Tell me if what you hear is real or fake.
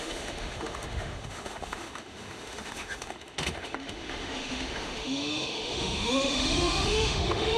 fake